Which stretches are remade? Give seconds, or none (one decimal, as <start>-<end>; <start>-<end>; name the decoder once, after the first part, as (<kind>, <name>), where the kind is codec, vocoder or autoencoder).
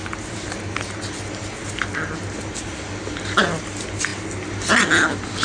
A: none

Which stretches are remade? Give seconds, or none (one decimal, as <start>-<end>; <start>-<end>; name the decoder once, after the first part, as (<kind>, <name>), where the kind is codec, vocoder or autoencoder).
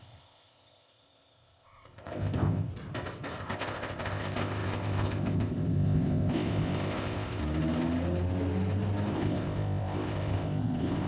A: 0.0-2.7 (codec, ZipCodec); 3.4-7.4; 9.1-11.1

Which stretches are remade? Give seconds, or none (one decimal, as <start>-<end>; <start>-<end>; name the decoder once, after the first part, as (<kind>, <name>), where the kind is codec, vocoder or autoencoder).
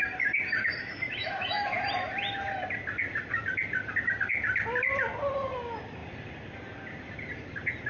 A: 0.8-1.8 (autoencoder, DAC-VAE)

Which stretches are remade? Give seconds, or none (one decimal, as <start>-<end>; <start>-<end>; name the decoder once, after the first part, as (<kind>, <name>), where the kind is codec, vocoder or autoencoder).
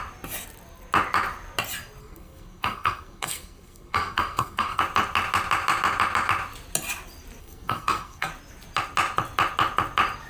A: 2.0-4.8 (codec, SNAC); 7.4-8.3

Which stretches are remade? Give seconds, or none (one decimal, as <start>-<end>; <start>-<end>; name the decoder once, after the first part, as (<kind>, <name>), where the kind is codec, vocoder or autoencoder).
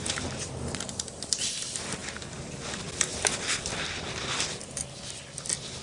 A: none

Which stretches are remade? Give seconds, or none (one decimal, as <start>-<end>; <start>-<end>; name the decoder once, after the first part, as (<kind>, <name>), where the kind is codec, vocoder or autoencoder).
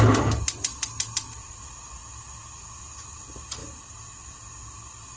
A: none